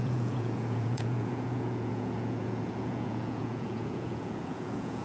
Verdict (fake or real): fake